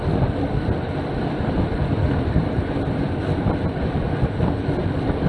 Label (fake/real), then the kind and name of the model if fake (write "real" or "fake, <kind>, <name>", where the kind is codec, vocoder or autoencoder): fake, vocoder, BigVGAN v2